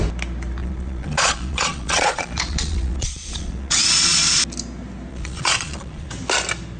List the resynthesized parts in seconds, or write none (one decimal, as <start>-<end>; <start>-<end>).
0.6-4.4; 5.1-6.1